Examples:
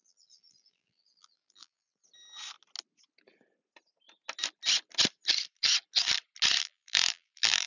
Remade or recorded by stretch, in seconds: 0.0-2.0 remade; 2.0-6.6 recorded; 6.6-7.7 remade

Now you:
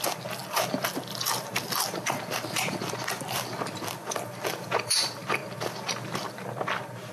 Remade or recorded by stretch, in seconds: 0.0-7.1 remade

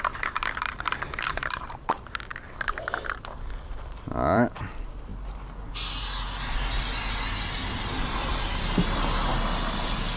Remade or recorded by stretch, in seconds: 0.0-5.1 remade; 5.1-7.5 recorded; 7.5-10.2 remade

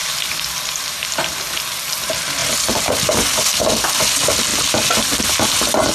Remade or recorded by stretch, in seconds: 0.0-1.4 remade; 1.4-5.9 recorded

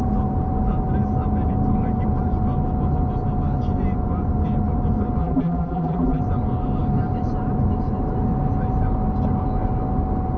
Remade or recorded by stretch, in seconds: 0.0-5.2 recorded; 5.2-6.2 remade; 6.2-10.4 recorded

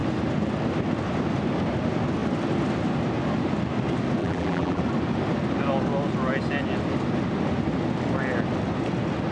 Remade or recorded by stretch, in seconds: 0.0-4.2 recorded; 4.2-4.8 remade; 4.8-9.3 recorded

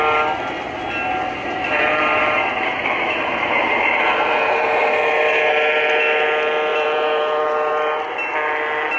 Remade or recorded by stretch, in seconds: 0.0-1.4 recorded; 1.4-5.6 remade; 5.6-6.7 recorded; 6.7-7.7 remade; 7.7-9.0 recorded

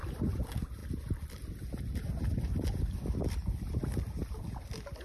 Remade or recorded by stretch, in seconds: 0.0-5.0 recorded